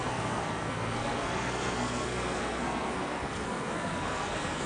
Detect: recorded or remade remade